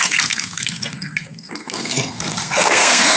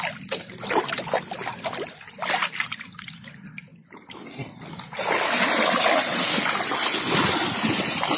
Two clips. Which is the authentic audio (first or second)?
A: second